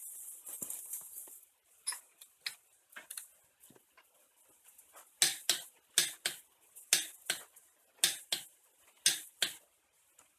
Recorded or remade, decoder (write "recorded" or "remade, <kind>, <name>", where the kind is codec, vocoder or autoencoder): recorded